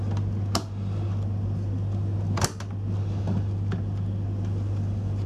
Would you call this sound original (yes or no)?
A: yes